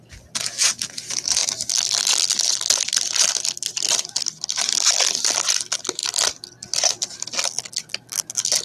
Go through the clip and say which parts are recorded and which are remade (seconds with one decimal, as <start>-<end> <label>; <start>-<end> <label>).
0.0-8.6 recorded